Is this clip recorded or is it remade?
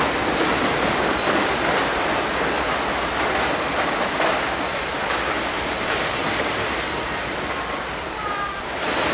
recorded